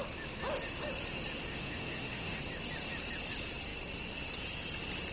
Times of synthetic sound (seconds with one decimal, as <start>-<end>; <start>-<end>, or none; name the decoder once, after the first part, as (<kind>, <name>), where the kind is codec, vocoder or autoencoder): 1.5-2.4 (autoencoder, DAC-VAE)